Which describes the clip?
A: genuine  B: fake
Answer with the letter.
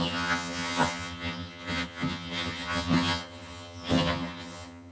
B